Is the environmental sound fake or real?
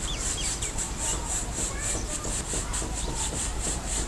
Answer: fake